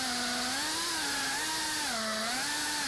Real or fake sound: real